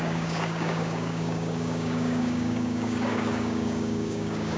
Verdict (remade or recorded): remade